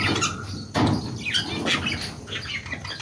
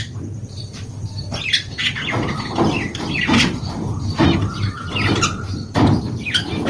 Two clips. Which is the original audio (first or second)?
first